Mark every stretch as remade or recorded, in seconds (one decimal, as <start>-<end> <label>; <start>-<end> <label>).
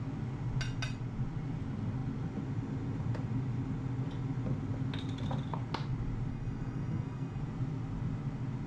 0.0-6.3 recorded; 6.3-7.4 remade; 7.4-8.7 recorded